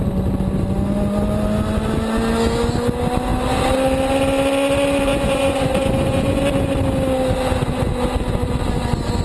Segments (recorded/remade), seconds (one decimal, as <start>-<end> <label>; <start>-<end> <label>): 0.0-5.1 recorded; 5.1-6.4 remade; 6.4-9.2 recorded